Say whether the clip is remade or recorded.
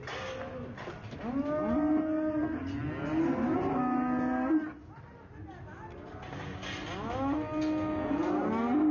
recorded